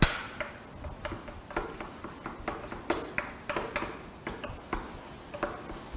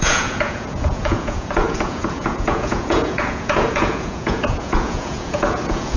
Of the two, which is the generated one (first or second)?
second